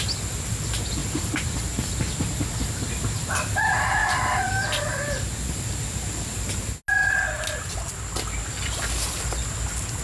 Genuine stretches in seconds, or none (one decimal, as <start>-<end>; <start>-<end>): 0.0-10.0